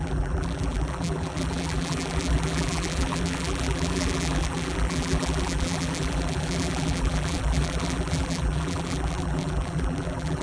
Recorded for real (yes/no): no